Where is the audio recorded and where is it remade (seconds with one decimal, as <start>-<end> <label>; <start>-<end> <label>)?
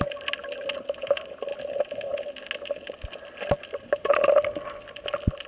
0.0-5.5 recorded